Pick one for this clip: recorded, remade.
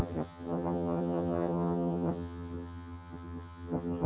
remade